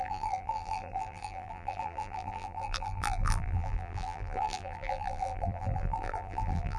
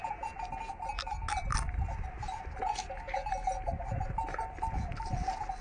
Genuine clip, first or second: second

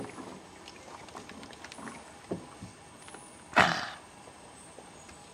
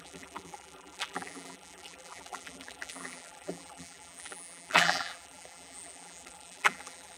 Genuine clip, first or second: first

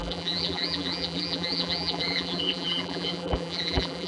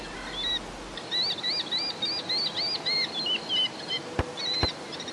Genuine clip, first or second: second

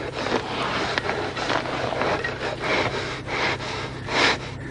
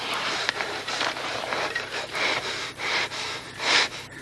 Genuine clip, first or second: first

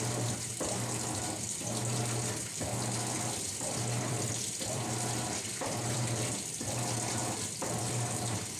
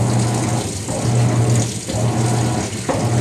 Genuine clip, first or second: second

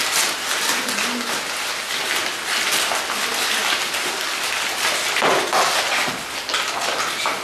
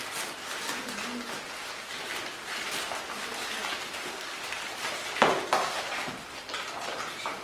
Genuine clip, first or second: first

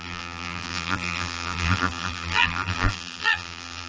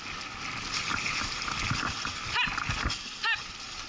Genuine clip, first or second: second